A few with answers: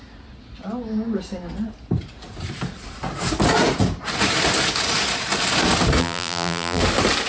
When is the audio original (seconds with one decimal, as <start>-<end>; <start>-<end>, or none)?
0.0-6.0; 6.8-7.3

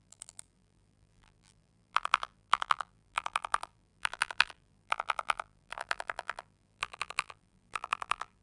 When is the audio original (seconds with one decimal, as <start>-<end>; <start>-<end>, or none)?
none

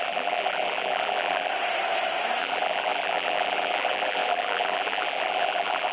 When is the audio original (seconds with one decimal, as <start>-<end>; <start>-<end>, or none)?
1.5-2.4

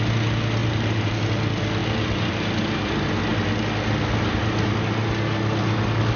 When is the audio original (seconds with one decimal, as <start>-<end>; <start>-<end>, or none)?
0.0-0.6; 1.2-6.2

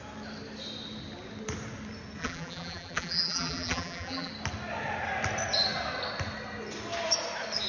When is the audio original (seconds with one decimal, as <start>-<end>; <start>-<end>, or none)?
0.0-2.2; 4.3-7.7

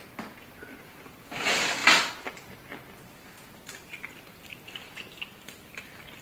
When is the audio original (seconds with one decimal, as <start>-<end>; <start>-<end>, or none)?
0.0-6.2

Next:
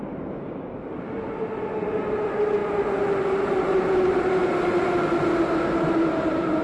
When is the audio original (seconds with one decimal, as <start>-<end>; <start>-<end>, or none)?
0.0-6.6

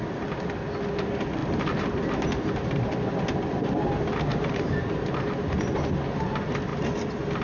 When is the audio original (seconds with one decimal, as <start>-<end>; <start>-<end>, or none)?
0.0-1.4; 2.7-4.3; 5.3-7.4